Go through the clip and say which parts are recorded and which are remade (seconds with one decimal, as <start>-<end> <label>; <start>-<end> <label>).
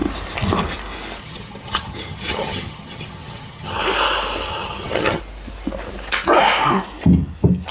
0.0-1.2 recorded; 1.2-3.8 remade; 3.8-4.5 recorded; 4.5-5.2 remade; 5.2-7.7 recorded